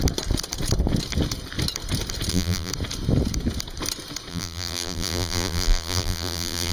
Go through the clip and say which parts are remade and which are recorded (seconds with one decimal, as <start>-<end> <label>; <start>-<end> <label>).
0.0-2.3 recorded; 2.3-2.7 remade; 2.7-4.3 recorded; 4.3-6.7 remade